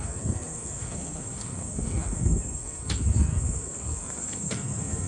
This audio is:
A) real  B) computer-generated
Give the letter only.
B